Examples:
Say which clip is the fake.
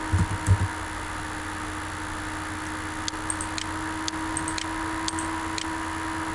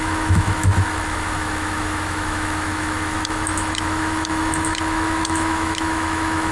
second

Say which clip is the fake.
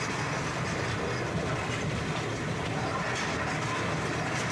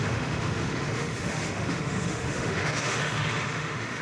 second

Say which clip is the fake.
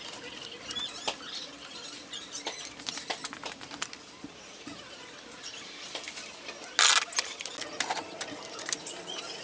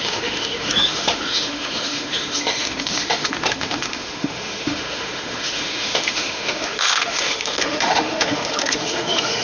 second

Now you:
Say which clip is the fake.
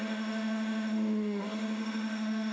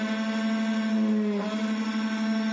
first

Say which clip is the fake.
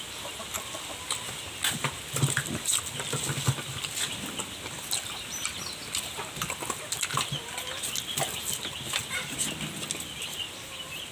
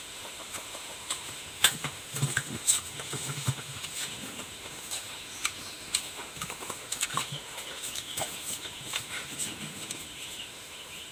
second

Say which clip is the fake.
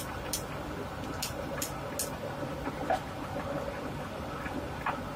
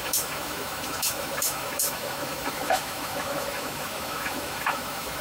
second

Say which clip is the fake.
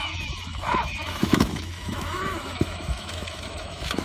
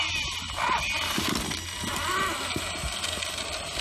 first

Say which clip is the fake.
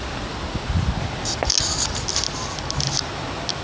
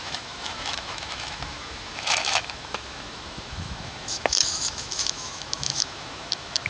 second